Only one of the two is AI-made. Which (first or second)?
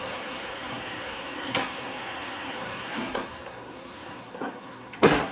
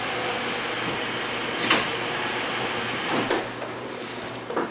first